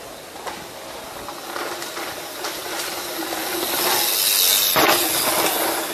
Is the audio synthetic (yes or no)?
no